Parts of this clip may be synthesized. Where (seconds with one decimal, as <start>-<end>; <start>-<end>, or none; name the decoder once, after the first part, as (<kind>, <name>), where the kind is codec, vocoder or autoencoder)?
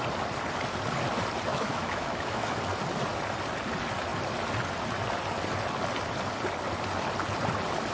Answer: 1.5-2.6 (autoencoder, DAC-VAE)